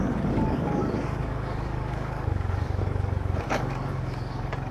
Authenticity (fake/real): fake